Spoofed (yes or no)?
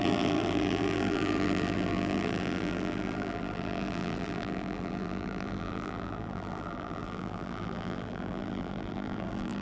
yes